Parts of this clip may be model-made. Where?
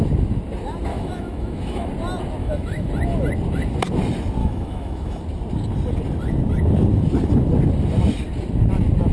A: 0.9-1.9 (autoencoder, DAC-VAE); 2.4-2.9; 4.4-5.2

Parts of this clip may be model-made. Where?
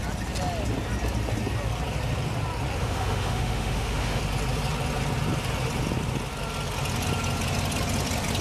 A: 2.8-4.2 (autoencoder, DAC-VAE)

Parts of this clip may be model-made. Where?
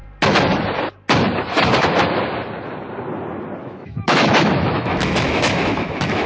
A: 3.6-6.3 (autoencoder, DAC-VAE)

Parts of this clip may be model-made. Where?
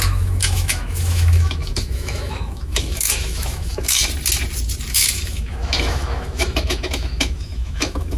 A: 0.0-4.0 (autoencoder, DAC-VAE); 4.9-8.2